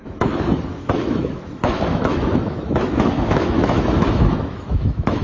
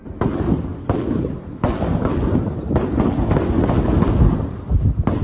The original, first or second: second